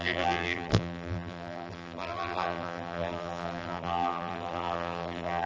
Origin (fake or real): fake